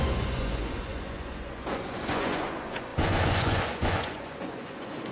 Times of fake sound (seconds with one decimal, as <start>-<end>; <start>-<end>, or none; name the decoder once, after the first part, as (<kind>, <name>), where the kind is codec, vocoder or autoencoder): 0.0-5.1 (vocoder, Vocos)